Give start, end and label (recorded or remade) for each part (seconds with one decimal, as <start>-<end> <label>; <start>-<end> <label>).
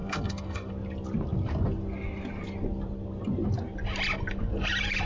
0.0-0.7 remade; 0.7-5.1 recorded